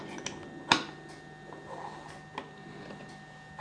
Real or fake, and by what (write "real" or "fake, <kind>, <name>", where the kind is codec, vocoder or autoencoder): real